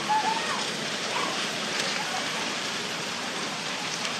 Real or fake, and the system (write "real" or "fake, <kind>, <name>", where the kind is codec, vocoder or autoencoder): fake, vocoder, BigVGAN v2